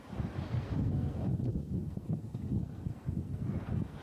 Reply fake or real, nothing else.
fake